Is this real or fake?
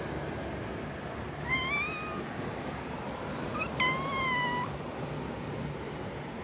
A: real